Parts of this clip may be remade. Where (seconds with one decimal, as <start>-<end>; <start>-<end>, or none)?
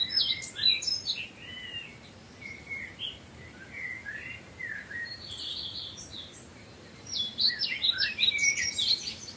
1.9-5.5; 6.5-7.5